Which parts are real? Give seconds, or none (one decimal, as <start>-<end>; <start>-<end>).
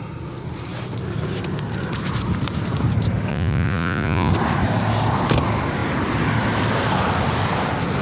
0.0-3.3; 4.3-8.0